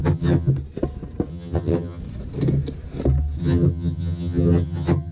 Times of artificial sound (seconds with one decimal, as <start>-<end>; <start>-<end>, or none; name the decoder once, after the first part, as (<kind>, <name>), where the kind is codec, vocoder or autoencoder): 0.0-0.5 (vocoder, HiFi-GAN); 1.3-2.0; 3.4-5.1